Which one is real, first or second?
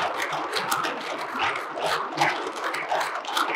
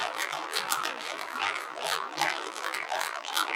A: first